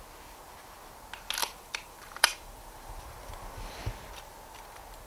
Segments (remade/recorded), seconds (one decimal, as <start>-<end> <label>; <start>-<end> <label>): 0.0-1.4 recorded; 1.4-3.8 remade; 3.8-5.1 recorded

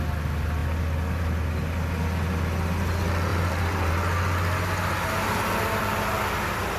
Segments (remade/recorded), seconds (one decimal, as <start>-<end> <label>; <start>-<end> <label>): 0.0-3.3 recorded; 3.3-3.9 remade; 3.9-6.8 recorded

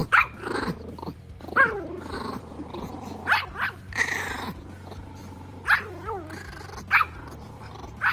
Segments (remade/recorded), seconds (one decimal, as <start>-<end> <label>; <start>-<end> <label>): 0.0-4.0 remade; 4.0-5.2 recorded; 5.2-5.9 remade; 5.9-8.1 recorded

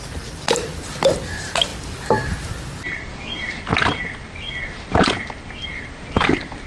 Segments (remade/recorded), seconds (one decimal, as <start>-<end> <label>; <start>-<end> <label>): 0.0-3.7 remade; 3.7-6.7 recorded

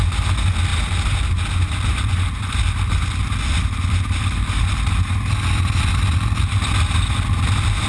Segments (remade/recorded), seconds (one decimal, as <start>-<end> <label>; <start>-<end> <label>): 0.0-7.9 recorded

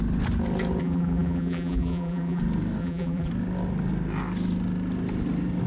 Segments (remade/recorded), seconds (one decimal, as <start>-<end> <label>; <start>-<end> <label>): 0.0-0.8 recorded; 0.8-2.4 remade; 2.4-2.8 recorded; 2.8-3.3 remade; 3.3-5.7 recorded

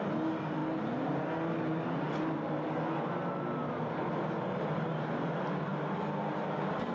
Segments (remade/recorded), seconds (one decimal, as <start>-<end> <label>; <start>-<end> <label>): 0.0-6.9 recorded